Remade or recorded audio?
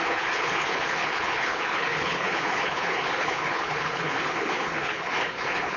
remade